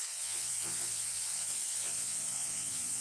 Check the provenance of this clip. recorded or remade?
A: remade